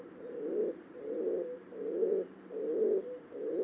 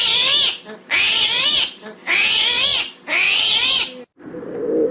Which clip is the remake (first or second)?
first